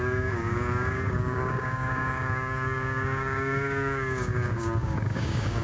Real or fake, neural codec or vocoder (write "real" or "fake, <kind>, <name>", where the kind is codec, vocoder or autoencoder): fake, codec, DAC